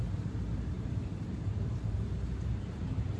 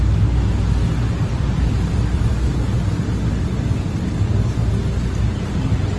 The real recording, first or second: second